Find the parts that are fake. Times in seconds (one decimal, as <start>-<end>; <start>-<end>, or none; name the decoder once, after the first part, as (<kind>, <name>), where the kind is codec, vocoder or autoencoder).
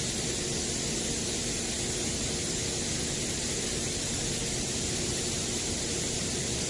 none